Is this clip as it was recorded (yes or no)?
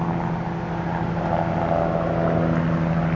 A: yes